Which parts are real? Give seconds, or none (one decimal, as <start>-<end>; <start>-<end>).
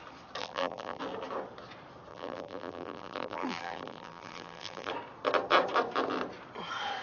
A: 0.0-0.4; 1.0-2.1; 4.9-7.0